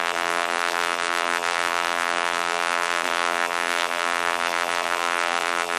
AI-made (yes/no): yes